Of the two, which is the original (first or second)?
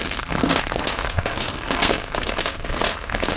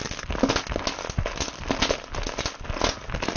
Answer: second